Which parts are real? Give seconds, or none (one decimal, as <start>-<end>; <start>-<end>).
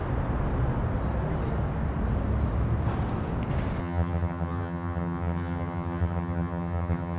0.0-3.8